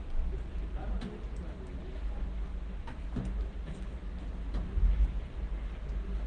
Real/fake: real